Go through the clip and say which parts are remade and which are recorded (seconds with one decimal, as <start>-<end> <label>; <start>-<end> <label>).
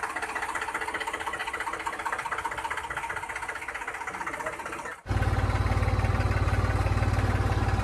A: 0.0-7.8 recorded